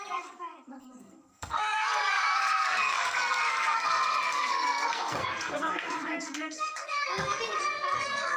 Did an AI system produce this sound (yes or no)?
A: yes